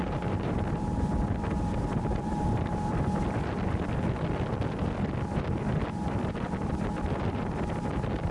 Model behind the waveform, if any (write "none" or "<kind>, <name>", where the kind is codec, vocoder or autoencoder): vocoder, BigVGAN v2